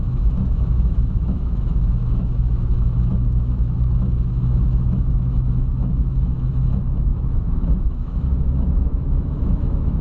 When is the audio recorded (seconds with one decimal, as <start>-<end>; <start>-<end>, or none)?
none